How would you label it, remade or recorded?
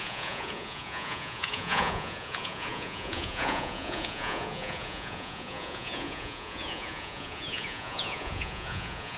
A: remade